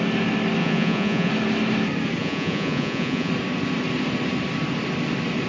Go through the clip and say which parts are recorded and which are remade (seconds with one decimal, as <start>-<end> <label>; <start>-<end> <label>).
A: 0.0-0.6 recorded; 0.6-1.3 remade; 1.3-2.2 recorded; 2.2-3.3 remade; 3.3-5.5 recorded